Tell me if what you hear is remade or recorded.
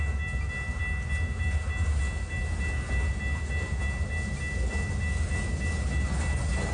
recorded